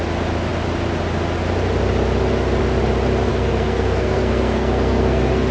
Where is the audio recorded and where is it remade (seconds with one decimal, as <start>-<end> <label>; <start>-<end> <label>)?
0.0-3.3 recorded; 3.3-5.5 remade